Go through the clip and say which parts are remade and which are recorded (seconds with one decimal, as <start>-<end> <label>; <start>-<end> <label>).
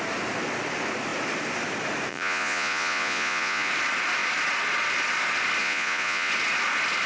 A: 0.0-2.1 recorded; 2.1-3.7 remade; 3.7-5.6 recorded; 5.6-6.3 remade; 6.3-7.1 recorded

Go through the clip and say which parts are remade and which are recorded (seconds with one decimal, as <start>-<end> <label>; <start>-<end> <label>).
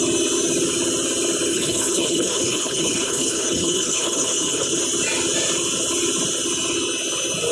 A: 0.0-1.5 recorded; 1.5-4.8 remade; 4.8-7.5 recorded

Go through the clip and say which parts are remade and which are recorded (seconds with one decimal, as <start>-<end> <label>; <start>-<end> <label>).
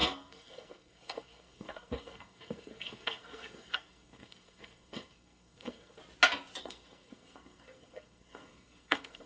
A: 0.0-6.0 remade; 6.0-6.6 recorded; 6.6-9.3 remade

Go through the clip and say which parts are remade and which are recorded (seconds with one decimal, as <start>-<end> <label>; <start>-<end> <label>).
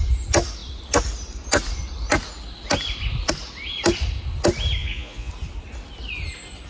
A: 0.0-4.8 recorded; 4.8-5.3 remade; 5.3-6.7 recorded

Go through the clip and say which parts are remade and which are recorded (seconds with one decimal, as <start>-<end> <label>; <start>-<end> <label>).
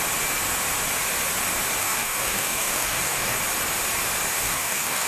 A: 0.0-1.8 recorded; 1.8-3.4 remade; 3.4-4.3 recorded; 4.3-5.1 remade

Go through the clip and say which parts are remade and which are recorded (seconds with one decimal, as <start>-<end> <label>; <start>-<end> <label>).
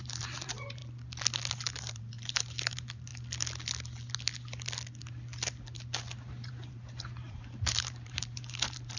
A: 0.0-0.8 remade; 0.8-1.8 recorded; 1.8-3.1 remade; 3.1-6.3 recorded; 6.3-9.0 remade